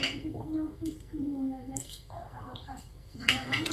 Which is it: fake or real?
fake